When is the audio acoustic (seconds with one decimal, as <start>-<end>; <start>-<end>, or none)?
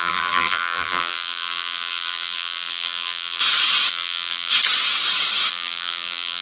3.4-3.9; 4.5-5.5